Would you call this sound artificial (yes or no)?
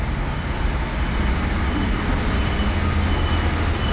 no